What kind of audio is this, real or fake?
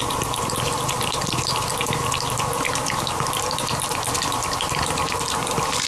real